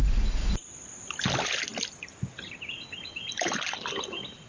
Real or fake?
real